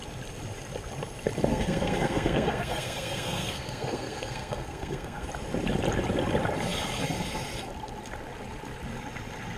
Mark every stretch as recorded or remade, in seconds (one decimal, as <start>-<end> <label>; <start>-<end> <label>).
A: 0.0-1.5 recorded; 1.5-5.3 remade; 5.3-9.6 recorded